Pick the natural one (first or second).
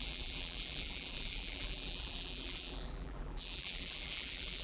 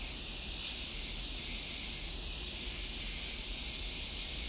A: second